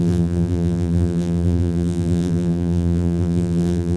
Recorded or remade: remade